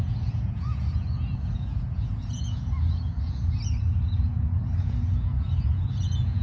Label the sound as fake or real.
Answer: fake